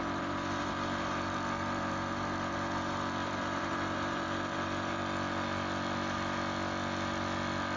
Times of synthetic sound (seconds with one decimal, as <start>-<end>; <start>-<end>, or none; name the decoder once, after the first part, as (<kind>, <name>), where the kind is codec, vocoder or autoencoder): 0.0-5.0 (vocoder, BigVGAN v2)

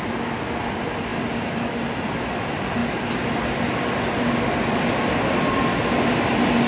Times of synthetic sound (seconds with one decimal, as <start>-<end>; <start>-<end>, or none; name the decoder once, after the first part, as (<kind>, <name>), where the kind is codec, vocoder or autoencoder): 1.1-1.7 (vocoder, BigVGAN v2)

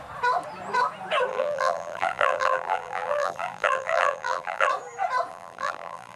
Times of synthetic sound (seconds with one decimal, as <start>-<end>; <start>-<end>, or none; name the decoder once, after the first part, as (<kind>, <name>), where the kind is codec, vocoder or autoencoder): 1.3-4.7 (vocoder, BigVGAN v2); 5.3-6.2

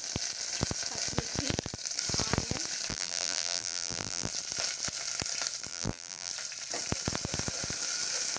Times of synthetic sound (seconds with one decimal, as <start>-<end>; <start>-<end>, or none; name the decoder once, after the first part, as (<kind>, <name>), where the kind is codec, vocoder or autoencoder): 2.9-4.3 (vocoder, BigVGAN v2); 5.7-6.3

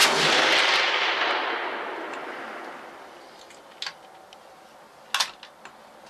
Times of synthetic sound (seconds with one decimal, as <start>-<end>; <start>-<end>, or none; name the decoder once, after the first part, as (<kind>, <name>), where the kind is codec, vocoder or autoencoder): 2.2-3.4 (vocoder, BigVGAN v2)

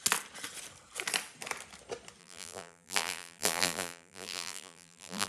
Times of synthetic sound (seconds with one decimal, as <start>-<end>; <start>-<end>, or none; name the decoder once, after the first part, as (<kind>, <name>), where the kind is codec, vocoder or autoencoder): 2.2-5.3 (vocoder, BigVGAN v2)

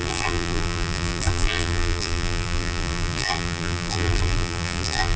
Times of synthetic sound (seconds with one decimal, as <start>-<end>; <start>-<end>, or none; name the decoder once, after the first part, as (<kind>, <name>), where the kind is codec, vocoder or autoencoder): 0.0-5.2 (vocoder, BigVGAN v2)